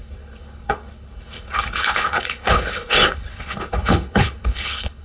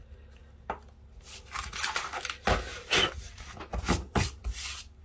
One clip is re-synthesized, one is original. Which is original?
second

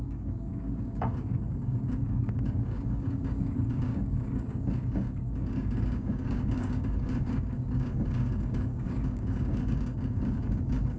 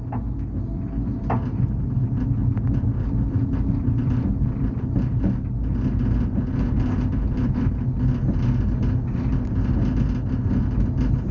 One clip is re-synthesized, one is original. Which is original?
second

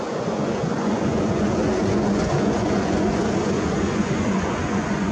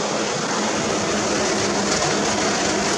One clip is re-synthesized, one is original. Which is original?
second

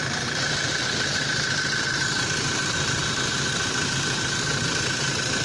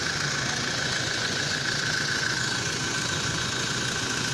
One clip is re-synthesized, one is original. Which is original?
first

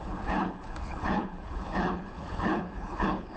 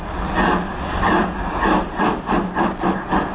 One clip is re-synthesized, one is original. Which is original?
second